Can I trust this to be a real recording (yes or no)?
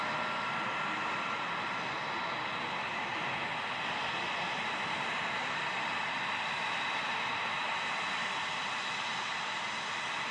yes